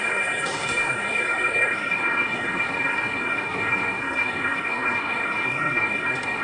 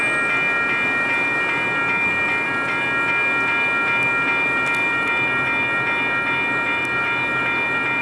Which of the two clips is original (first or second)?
second